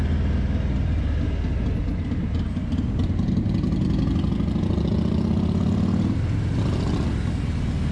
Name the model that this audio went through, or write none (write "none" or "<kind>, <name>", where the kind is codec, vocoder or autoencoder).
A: none